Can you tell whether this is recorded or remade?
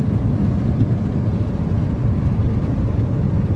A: recorded